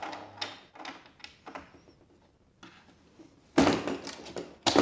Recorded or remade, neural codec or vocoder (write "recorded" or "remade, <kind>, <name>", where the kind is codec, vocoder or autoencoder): recorded